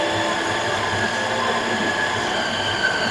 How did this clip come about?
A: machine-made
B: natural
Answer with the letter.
B